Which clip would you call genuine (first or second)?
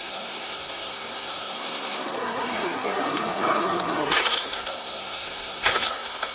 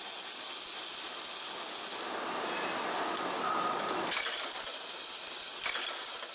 second